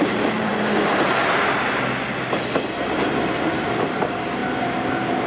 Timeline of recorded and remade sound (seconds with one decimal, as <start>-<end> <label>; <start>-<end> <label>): 0.0-0.5 remade; 0.5-3.5 recorded; 3.5-4.4 remade; 4.4-5.3 recorded